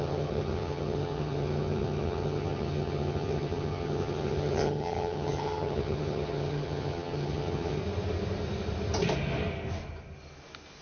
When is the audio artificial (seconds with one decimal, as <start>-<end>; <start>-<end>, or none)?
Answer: 0.0-7.8